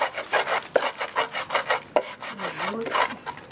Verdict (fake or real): real